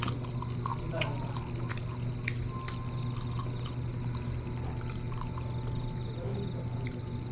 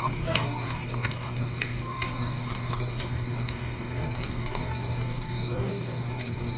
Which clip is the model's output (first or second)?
second